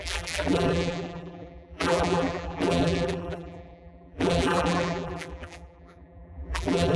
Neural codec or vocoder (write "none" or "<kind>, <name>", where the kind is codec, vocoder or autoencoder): vocoder, BigVGAN v2